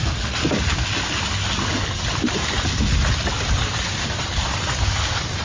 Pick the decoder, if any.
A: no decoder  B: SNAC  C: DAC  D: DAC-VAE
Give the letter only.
A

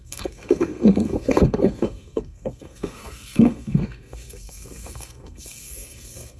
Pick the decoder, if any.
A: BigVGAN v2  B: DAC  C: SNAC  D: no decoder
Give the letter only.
C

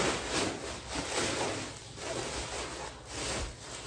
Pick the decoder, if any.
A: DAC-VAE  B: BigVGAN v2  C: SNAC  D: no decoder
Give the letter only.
D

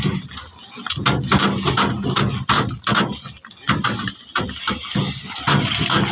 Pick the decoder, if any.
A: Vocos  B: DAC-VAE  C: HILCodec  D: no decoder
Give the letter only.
D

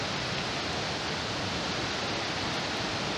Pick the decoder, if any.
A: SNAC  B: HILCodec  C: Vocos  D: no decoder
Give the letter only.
D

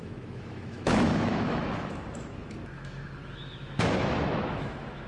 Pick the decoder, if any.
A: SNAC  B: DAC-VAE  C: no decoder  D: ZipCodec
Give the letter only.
B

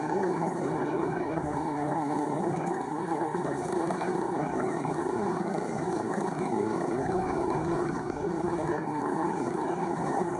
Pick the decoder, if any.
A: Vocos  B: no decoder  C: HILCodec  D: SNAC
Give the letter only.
D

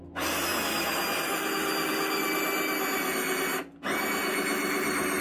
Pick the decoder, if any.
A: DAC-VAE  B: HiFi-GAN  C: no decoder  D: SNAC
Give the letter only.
C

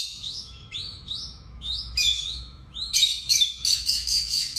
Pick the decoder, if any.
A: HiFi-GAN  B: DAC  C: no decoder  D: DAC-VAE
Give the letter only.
D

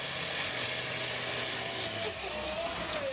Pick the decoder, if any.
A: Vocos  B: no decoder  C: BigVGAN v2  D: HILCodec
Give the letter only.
B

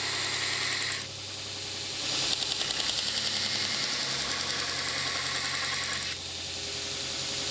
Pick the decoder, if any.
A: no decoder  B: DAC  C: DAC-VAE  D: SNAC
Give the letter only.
A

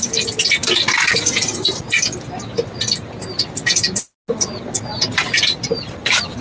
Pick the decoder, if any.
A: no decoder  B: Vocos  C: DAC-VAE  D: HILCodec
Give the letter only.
A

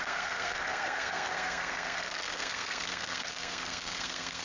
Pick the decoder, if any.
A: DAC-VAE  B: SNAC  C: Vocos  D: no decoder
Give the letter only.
B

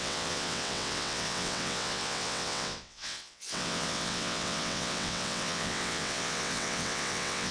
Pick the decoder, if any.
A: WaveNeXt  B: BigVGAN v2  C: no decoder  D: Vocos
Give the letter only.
A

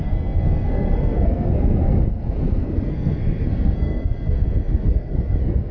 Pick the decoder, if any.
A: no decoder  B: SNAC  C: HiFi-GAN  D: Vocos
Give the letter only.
B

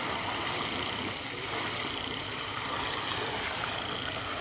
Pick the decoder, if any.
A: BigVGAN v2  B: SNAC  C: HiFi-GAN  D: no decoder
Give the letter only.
D